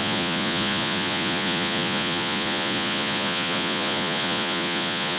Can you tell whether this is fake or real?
fake